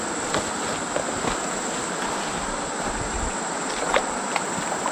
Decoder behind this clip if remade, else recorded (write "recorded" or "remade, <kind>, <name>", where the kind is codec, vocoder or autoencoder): recorded